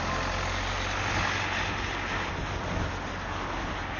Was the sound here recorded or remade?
recorded